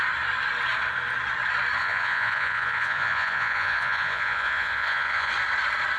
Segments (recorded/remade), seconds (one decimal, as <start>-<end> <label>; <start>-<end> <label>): 0.0-1.8 recorded; 1.8-5.3 remade; 5.3-6.0 recorded